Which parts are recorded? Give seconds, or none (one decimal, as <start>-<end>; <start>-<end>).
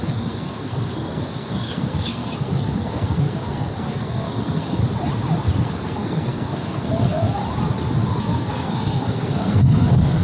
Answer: 4.8-5.6; 7.4-8.2